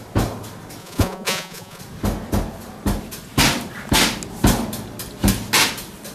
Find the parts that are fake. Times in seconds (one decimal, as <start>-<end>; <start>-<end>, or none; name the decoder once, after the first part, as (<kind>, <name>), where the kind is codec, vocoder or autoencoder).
0.8-1.8 (vocoder, Vocos)